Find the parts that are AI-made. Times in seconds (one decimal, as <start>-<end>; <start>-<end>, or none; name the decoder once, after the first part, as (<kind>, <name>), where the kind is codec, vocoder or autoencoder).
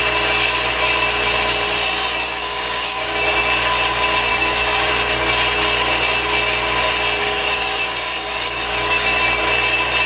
2.4-3.4 (codec, DAC); 4.3-4.9; 7.2-9.4